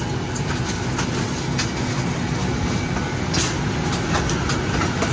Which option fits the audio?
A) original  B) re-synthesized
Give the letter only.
A